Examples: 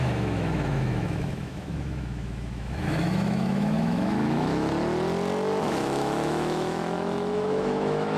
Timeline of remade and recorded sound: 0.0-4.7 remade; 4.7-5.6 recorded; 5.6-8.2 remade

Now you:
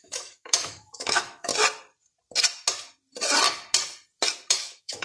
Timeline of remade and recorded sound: 0.0-1.5 remade; 1.5-4.5 recorded; 4.5-5.0 remade

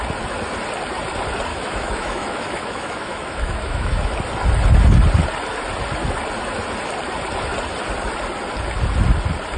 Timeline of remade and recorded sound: 0.0-1.5 recorded; 1.5-4.1 remade; 4.1-9.6 recorded

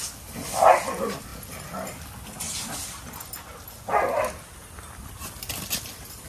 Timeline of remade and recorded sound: 0.0-6.3 recorded

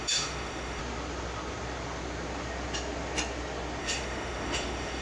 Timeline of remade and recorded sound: 0.0-0.8 remade; 0.8-3.8 recorded; 3.8-5.0 remade